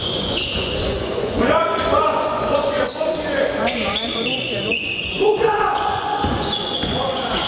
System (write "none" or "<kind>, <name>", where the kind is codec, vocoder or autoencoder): vocoder, Vocos